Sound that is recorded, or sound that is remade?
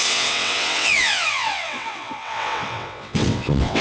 remade